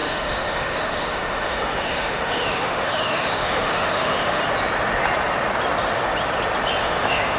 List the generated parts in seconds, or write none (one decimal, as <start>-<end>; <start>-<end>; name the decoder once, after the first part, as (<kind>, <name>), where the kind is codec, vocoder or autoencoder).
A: 0.0-4.4 (autoencoder, DAC-VAE); 6.8-7.4